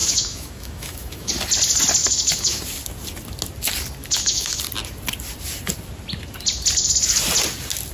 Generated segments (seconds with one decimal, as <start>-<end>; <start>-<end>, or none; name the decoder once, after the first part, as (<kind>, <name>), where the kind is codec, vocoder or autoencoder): 0.0-1.3 (autoencoder, DAC-VAE); 2.0-2.6; 4.0-4.6